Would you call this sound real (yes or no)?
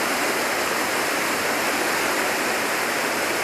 yes